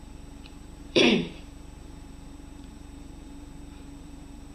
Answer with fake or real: fake